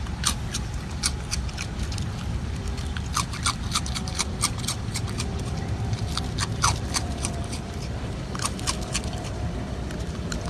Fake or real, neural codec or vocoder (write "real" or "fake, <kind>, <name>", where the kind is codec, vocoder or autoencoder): fake, vocoder, BigVGAN v2